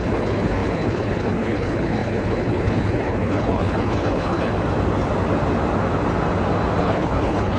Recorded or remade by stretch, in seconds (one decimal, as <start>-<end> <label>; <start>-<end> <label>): 0.0-4.5 remade; 4.5-6.8 recorded; 6.8-7.6 remade